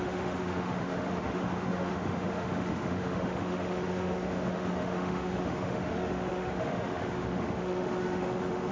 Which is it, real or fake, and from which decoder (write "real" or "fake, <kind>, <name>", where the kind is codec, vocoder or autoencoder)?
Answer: fake, autoencoder, DAC-VAE